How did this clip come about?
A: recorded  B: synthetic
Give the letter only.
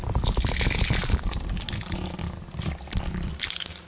A